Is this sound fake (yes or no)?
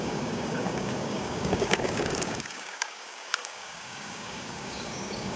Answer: yes